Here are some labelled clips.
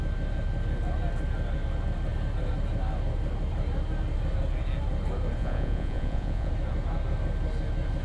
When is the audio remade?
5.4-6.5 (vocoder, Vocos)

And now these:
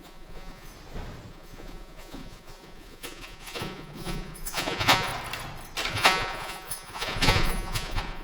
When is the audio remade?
0.0-0.7 (vocoder, Vocos); 1.3-5.1; 5.9-8.2